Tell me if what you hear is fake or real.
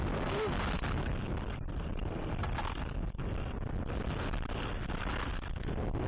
real